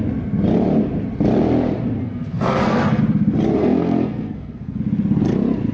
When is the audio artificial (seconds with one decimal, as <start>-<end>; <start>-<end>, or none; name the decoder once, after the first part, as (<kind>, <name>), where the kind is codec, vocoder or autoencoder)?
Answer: 2.0-3.0 (codec, SNAC); 3.6-4.8